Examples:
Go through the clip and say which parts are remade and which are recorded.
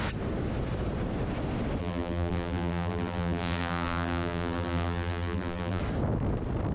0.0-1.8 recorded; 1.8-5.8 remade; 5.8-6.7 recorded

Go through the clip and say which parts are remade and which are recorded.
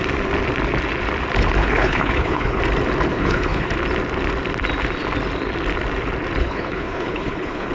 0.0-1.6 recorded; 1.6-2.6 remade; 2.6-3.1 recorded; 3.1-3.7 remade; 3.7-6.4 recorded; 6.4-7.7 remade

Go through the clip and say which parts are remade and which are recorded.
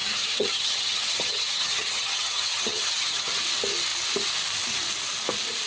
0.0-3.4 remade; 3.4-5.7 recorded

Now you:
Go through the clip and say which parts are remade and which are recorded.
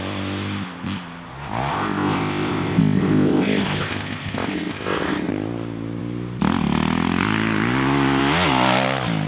0.0-1.7 recorded; 1.7-5.3 remade; 5.3-9.3 recorded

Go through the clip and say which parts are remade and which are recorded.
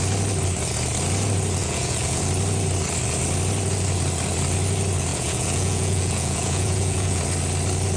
0.0-1.6 recorded; 1.6-2.2 remade; 2.2-5.1 recorded; 5.1-7.2 remade; 7.2-8.0 recorded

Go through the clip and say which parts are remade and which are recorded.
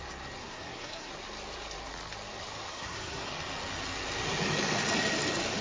0.0-0.4 recorded; 0.4-1.1 remade; 1.1-2.7 recorded; 2.7-3.3 remade; 3.3-5.6 recorded